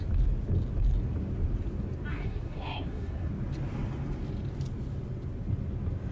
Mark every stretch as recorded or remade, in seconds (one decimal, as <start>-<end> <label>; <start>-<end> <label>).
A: 0.0-2.1 recorded; 2.1-3.3 remade; 3.3-6.1 recorded